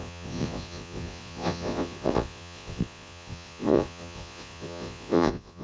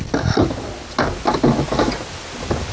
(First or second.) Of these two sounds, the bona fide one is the second